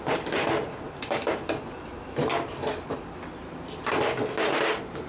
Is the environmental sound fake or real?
real